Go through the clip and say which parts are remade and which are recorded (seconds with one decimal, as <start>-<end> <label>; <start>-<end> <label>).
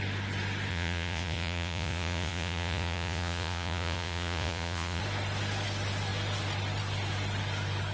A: 0.0-0.7 recorded; 0.7-5.0 remade; 5.0-7.9 recorded